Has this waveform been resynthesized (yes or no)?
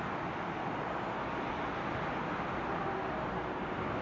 no